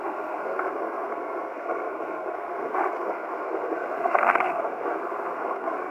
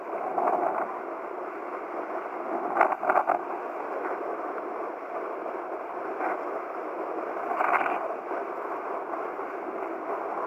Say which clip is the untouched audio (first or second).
second